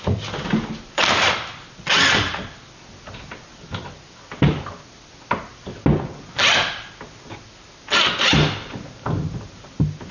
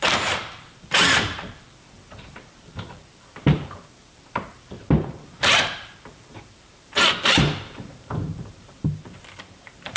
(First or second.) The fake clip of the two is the second